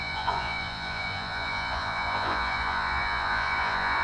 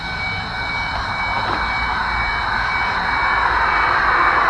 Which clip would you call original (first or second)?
second